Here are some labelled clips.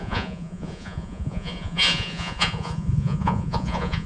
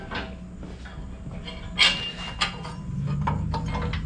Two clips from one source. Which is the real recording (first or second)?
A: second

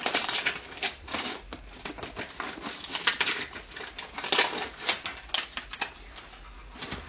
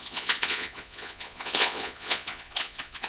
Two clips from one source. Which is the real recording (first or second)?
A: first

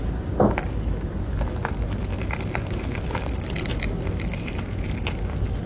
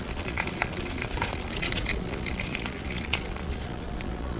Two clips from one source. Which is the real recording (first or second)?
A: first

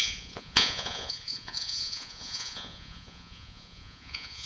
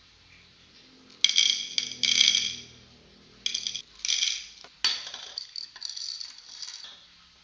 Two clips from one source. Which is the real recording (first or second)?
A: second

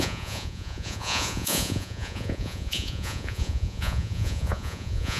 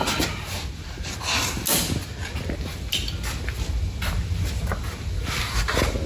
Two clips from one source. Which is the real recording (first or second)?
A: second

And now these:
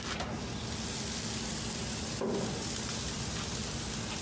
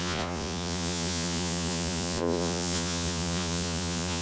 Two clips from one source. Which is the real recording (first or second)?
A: first